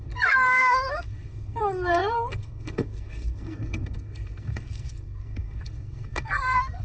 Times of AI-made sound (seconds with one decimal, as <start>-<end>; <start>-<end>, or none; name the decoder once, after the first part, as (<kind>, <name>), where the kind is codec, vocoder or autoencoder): 0.0-6.8 (codec, SNAC)